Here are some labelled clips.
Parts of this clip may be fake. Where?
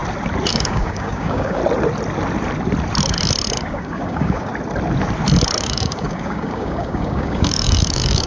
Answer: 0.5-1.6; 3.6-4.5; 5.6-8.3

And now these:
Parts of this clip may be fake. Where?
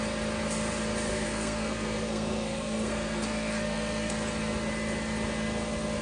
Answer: 1.1-4.1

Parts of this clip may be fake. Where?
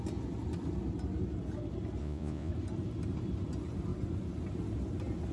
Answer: 2.0-2.5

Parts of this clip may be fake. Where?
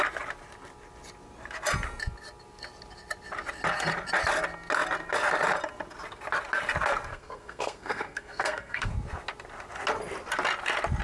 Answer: 7.1-8.9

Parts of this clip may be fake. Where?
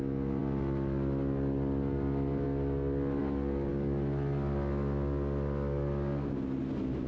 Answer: none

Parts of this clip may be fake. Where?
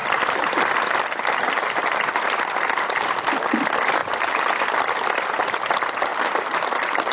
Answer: 0.0-2.9; 4.0-4.5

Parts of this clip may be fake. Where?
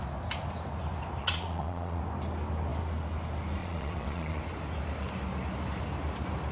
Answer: 1.2-2.0; 3.6-4.4